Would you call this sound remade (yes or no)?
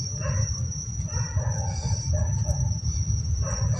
no